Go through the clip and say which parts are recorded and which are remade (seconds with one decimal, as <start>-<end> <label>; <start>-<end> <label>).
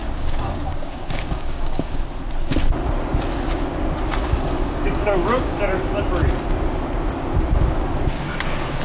0.0-2.0 remade; 2.0-4.1 recorded; 4.1-5.6 remade; 5.6-8.8 recorded